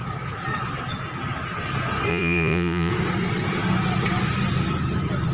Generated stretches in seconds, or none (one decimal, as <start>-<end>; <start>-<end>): 2.1-2.9

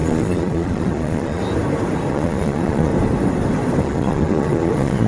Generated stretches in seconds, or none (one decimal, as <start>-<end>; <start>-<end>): 0.0-1.4; 2.1-2.9; 3.8-5.1

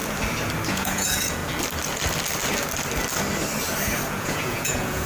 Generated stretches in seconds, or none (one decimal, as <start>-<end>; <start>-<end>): 0.7-1.4; 4.1-5.1